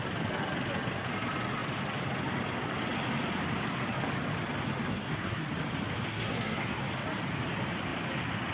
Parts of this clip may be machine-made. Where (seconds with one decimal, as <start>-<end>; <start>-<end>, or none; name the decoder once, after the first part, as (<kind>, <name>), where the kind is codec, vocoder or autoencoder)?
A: 4.9-5.5 (codec, SNAC); 6.1-6.8